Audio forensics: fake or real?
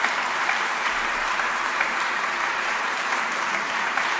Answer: fake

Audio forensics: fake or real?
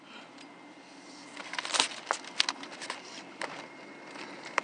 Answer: real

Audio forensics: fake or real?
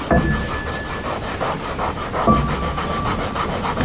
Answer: real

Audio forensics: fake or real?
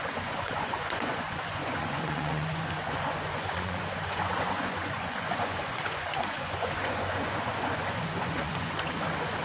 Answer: fake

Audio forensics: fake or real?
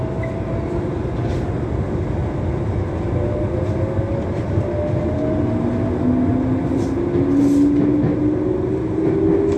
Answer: real